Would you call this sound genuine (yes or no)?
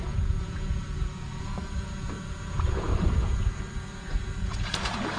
no